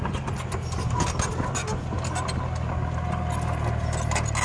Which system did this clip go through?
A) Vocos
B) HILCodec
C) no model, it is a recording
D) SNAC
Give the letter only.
C